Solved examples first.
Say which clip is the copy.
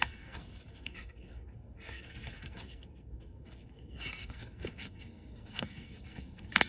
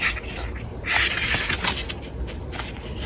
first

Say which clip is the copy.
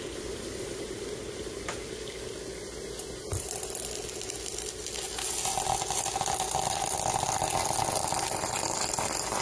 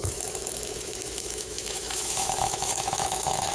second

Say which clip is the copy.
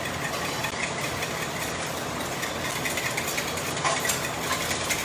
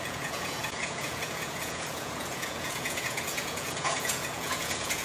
second